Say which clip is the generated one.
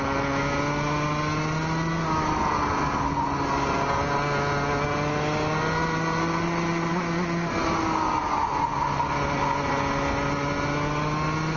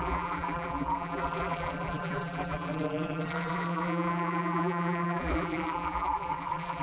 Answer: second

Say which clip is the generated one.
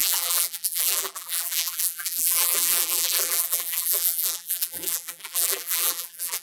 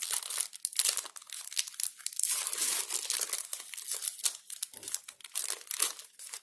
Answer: first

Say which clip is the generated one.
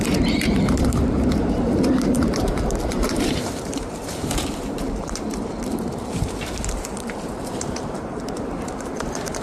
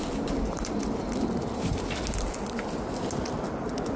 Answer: first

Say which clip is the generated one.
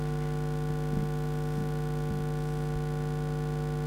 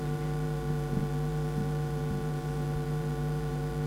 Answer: second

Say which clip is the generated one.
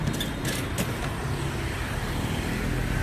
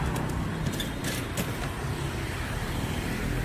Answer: second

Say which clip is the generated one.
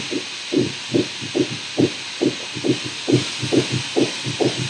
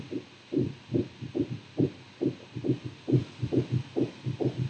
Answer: second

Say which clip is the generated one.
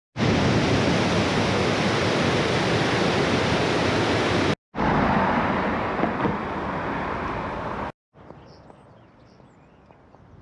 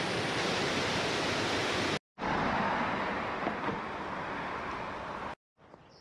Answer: second